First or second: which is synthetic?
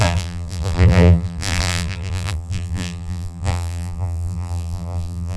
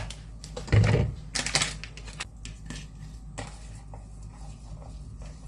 first